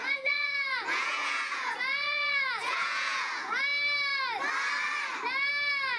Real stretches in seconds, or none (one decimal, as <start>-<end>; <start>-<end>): 3.6-6.0